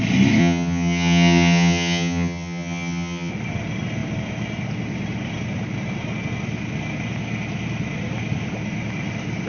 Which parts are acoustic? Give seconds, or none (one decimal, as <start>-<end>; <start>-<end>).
0.0-0.4; 3.3-9.5